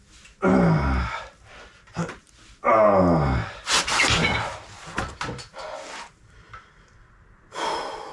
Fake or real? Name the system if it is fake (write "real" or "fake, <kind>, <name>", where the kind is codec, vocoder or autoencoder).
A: real